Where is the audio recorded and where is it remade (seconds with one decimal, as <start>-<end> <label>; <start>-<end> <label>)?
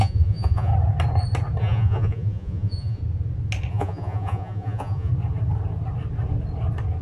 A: 0.0-0.7 remade; 0.7-1.6 recorded; 1.6-3.0 remade; 3.0-3.7 recorded; 3.7-5.1 remade; 5.1-7.0 recorded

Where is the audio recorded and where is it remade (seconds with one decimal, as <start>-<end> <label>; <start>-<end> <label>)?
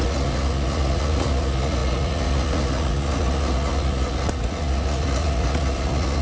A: 0.0-6.2 remade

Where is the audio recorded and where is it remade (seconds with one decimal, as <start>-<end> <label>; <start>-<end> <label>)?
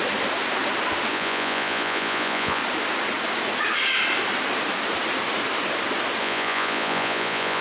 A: 0.0-1.1 recorded; 1.1-2.6 remade; 2.6-6.2 recorded; 6.2-7.6 remade